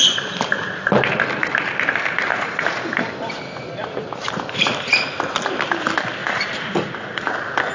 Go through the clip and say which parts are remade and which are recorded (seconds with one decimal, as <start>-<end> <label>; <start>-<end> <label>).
0.0-2.3 recorded; 2.3-2.8 remade; 2.8-6.2 recorded; 6.2-7.3 remade; 7.3-7.7 recorded